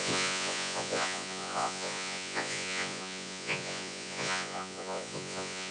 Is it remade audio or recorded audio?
remade